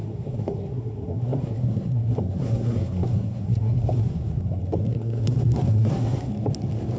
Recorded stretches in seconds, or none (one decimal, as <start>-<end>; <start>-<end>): 6.3-7.0